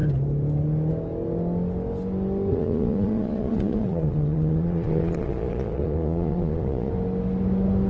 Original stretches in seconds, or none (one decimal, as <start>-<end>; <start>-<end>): 0.0-2.5; 6.9-7.9